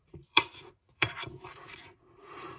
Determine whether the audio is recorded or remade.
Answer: remade